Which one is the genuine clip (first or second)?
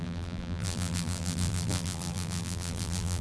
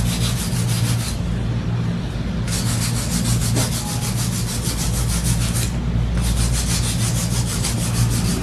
second